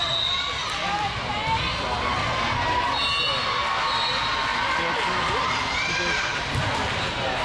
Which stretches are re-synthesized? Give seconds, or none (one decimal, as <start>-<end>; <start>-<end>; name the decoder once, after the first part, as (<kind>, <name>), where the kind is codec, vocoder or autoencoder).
6.3-6.8 (vocoder, BigVGAN v2)